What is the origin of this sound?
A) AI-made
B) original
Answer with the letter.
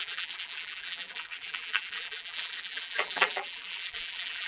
A